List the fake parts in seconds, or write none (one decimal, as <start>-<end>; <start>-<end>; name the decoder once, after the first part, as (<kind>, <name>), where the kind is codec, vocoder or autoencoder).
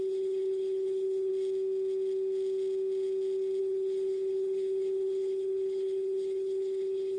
0.0-1.3 (codec, HILCodec); 3.6-7.2